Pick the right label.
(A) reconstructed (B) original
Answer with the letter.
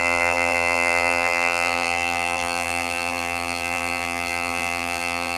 A